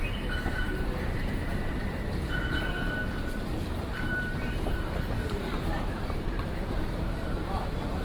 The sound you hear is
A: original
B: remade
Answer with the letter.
B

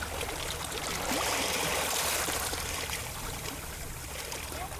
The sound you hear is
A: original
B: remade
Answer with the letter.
A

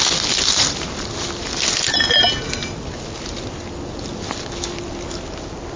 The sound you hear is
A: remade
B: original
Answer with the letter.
B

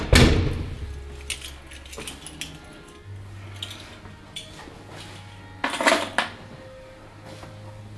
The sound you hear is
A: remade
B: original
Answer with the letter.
B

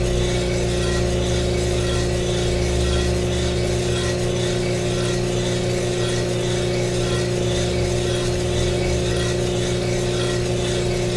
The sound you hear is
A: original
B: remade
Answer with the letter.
A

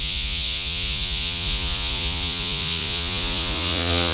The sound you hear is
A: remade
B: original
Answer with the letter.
A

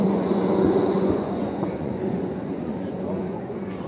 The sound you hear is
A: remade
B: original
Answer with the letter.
A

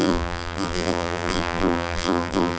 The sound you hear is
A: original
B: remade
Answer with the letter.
B